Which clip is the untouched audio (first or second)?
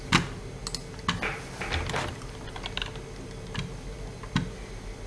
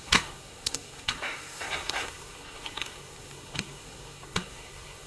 first